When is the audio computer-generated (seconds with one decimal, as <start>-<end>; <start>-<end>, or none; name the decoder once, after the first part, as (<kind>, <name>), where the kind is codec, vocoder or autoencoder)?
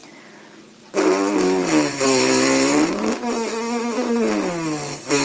0.0-3.1 (vocoder, BigVGAN v2)